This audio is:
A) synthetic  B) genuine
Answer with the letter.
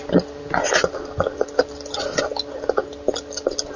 B